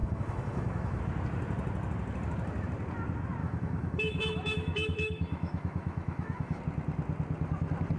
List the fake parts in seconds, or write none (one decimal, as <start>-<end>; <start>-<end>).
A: 0.0-1.0; 3.4-6.6